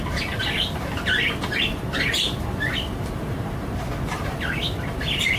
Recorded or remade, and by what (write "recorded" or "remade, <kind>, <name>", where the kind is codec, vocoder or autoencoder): recorded